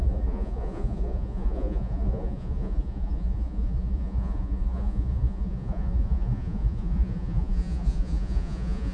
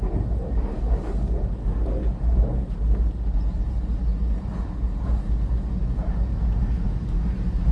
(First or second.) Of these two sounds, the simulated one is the first